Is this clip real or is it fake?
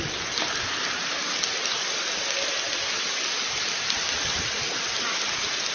real